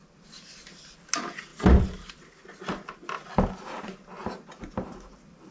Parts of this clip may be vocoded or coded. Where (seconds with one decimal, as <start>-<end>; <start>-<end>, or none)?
none